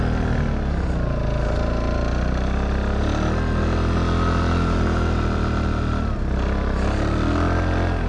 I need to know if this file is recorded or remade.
recorded